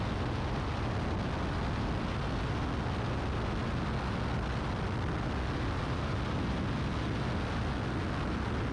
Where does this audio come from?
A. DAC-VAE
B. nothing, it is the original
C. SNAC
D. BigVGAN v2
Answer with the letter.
B